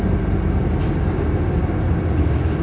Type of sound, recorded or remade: recorded